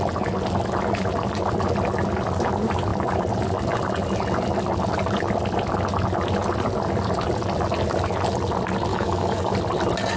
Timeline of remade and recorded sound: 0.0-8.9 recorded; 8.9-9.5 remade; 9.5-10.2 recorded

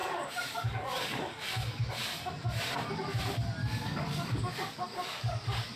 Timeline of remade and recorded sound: 0.0-1.9 remade; 1.9-3.6 recorded; 3.6-5.8 remade

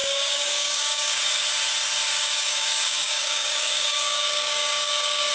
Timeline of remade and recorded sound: 0.0-1.2 remade; 1.2-2.2 recorded; 2.2-5.3 remade